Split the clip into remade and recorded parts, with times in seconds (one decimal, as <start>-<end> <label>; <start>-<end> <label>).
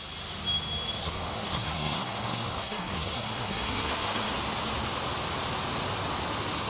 0.0-1.0 recorded; 1.0-4.3 remade; 4.3-6.7 recorded